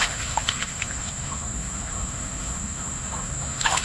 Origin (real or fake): fake